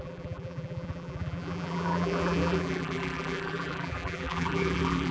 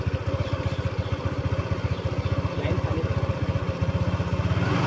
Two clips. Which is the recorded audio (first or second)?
second